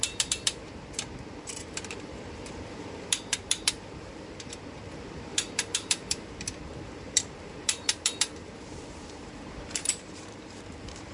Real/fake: fake